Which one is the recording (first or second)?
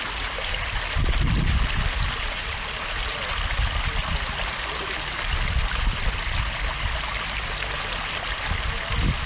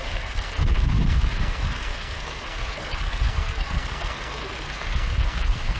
first